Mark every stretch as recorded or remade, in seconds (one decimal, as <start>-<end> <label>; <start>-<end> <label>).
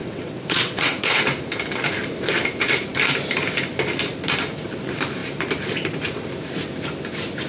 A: 0.0-1.2 remade; 1.2-7.5 recorded